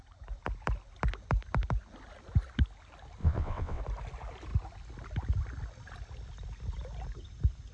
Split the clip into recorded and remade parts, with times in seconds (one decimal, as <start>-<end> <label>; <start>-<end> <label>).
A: 0.0-3.2 recorded; 3.2-3.8 remade; 3.8-7.7 recorded